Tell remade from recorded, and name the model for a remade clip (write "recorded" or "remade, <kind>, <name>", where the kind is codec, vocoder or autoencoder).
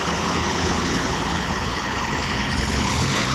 remade, codec, HILCodec